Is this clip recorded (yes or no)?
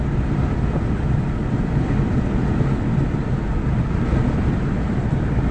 yes